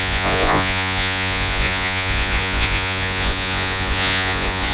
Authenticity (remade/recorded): remade